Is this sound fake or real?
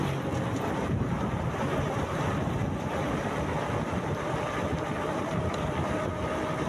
real